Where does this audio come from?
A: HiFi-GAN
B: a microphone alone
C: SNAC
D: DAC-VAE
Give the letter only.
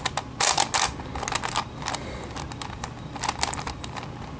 B